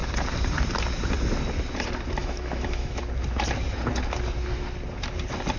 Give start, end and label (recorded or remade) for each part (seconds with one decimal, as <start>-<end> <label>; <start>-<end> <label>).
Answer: 0.0-2.2 recorded; 2.2-3.0 remade; 3.0-5.6 recorded